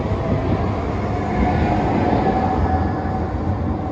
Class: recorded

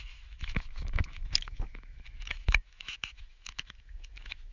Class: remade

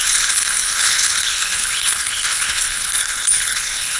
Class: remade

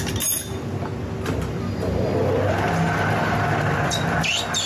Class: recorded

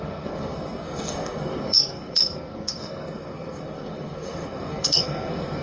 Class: remade